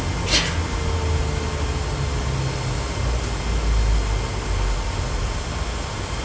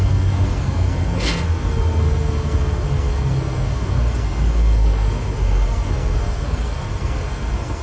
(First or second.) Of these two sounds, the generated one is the second